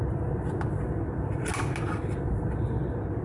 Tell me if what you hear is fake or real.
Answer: real